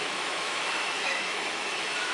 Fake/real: fake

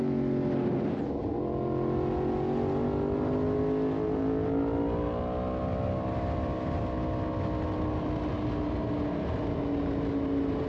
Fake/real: real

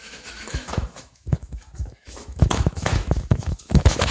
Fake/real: fake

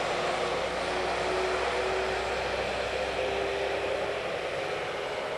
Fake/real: real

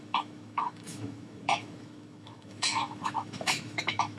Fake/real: fake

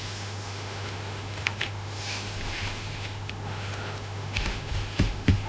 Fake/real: fake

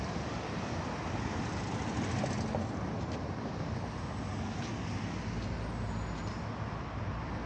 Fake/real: real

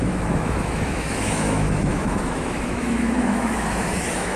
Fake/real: fake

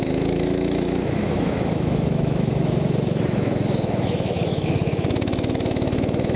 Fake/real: fake